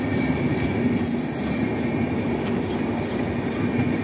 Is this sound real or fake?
real